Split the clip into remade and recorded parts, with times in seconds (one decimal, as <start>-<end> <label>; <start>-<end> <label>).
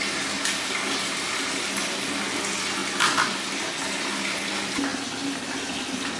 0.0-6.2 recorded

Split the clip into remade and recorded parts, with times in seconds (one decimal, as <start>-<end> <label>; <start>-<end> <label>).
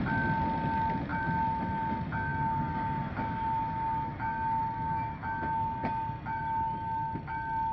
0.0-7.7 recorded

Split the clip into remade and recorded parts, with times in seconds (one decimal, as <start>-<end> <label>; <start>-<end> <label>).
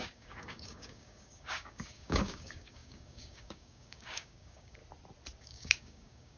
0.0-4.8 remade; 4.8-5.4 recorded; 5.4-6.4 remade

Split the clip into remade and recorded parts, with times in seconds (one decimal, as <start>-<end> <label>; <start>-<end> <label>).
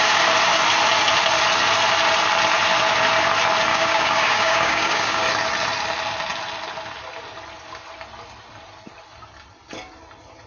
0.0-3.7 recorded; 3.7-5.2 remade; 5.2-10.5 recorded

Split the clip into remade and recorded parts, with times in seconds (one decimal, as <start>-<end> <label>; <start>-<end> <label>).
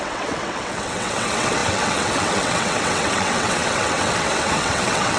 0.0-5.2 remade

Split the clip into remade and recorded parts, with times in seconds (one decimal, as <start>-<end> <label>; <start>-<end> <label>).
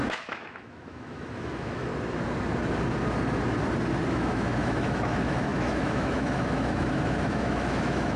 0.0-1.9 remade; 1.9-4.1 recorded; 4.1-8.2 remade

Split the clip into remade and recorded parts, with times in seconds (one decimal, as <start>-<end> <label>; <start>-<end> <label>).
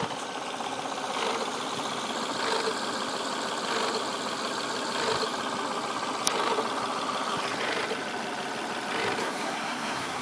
0.0-9.2 recorded; 9.2-10.2 remade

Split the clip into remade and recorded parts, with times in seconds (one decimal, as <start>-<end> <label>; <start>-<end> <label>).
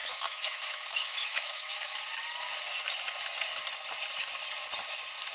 0.0-2.0 remade; 2.0-5.3 recorded